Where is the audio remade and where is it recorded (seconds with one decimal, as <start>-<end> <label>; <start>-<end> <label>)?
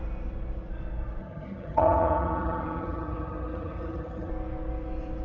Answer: 0.0-1.2 recorded; 1.2-4.3 remade; 4.3-5.2 recorded